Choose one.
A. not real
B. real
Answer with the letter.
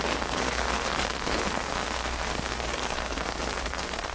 A